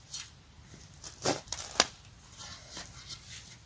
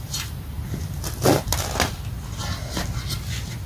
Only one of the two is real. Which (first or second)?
second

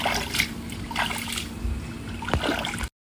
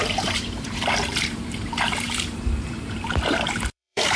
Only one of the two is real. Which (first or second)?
first